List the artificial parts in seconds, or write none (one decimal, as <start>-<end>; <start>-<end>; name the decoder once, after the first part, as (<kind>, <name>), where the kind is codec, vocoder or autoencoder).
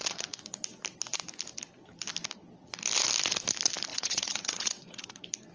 3.9-5.1 (vocoder, WaveNeXt)